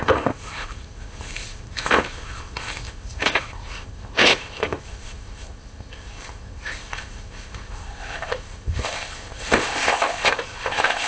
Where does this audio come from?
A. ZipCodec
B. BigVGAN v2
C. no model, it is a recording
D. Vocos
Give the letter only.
A